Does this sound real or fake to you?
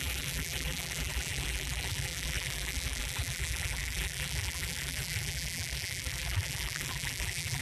fake